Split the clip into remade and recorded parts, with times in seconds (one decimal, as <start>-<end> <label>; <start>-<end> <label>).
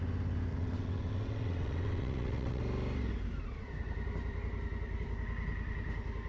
0.0-0.5 recorded; 0.5-2.6 remade; 2.6-6.3 recorded